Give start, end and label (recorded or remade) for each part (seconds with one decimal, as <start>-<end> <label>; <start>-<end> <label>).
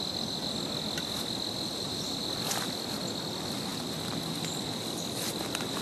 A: 0.0-5.8 recorded